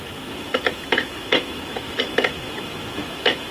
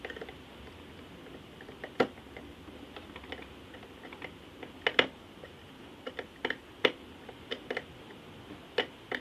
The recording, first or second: second